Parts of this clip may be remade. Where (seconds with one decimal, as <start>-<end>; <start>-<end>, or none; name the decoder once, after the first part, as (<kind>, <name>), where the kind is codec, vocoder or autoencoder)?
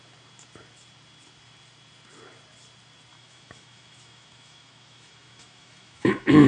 3.1-6.5 (autoencoder, DAC-VAE)